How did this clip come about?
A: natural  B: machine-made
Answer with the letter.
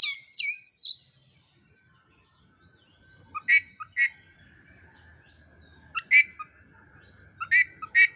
A